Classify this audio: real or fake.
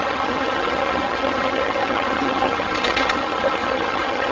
fake